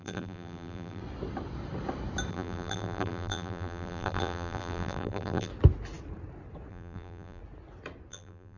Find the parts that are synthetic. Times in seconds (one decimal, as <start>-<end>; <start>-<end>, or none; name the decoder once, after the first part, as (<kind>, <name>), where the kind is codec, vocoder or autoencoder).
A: 0.0-1.0 (vocoder, BigVGAN v2); 2.3-5.5; 6.7-7.4; 8.1-8.6